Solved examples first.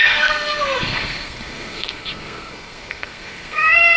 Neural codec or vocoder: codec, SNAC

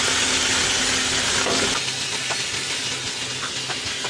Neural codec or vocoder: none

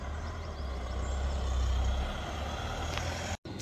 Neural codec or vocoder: none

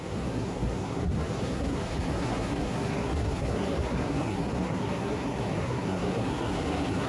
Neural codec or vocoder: codec, SNAC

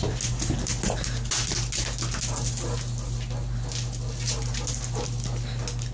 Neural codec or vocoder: none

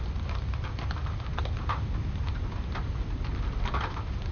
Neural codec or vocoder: none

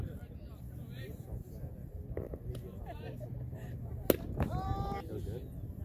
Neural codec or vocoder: none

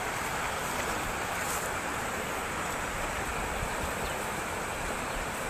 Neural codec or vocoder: none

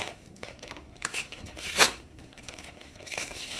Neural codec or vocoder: codec, SNAC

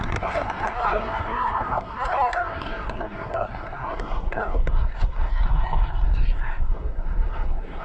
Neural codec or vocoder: codec, SNAC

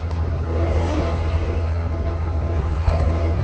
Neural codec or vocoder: codec, SNAC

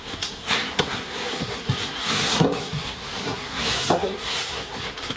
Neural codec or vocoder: codec, SNAC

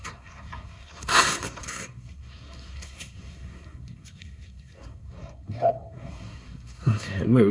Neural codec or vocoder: codec, SNAC